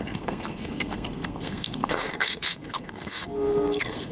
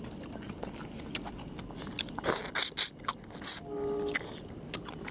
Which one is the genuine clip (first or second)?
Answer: second